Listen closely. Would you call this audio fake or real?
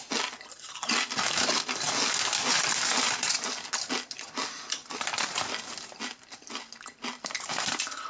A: real